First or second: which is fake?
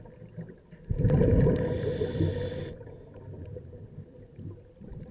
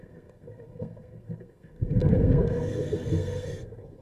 second